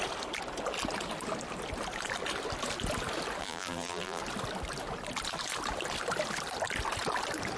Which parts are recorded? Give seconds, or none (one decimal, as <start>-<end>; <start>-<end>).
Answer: 0.0-3.4; 4.2-7.6